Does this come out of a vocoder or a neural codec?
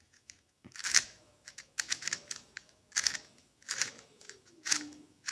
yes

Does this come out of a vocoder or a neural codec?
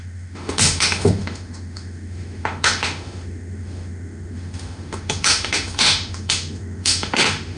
yes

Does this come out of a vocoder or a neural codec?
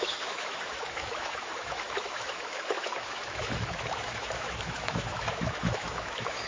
yes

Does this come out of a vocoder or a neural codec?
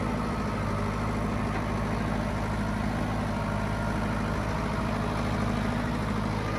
no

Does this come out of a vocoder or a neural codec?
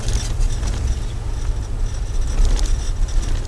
no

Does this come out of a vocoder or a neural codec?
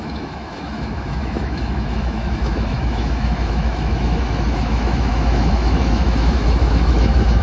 yes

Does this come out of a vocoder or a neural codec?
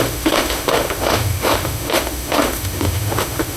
yes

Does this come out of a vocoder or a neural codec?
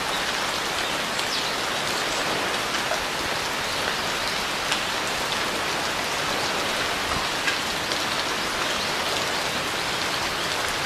no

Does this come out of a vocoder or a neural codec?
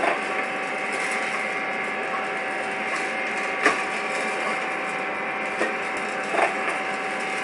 no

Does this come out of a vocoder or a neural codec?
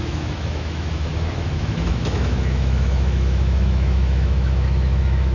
yes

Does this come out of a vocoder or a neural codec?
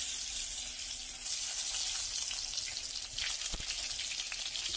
no